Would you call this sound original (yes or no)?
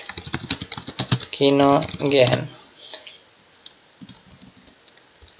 yes